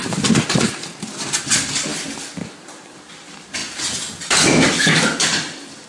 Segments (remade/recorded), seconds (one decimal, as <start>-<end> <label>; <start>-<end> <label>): 0.0-1.9 remade; 1.9-2.6 recorded; 2.6-3.6 remade; 3.6-5.0 recorded; 5.0-5.9 remade